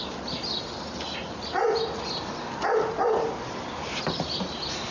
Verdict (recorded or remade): recorded